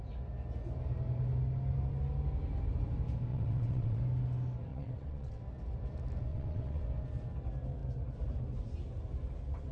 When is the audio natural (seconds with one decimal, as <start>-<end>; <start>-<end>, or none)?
0.0-3.3; 4.0-4.7; 5.4-6.3; 6.8-9.7